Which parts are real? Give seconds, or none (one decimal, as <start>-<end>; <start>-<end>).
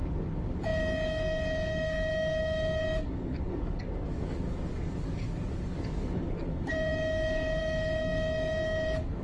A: none